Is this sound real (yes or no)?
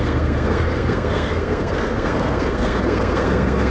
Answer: no